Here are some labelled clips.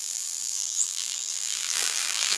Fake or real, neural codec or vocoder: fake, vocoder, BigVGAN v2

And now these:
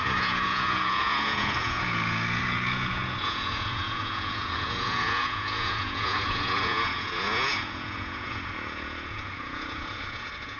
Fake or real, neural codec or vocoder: fake, vocoder, Vocos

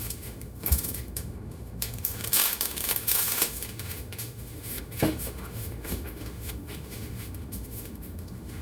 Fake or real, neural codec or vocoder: fake, autoencoder, DAC-VAE